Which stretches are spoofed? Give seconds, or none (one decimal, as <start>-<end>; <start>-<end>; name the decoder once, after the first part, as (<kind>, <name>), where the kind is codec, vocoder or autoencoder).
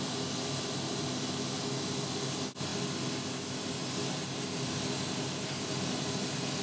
none